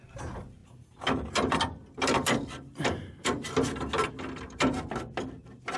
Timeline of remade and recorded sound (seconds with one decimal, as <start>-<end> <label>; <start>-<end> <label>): 0.0-5.8 recorded